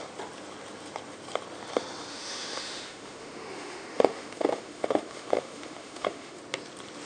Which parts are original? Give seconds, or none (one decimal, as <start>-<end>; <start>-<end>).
0.0-2.1; 6.4-7.1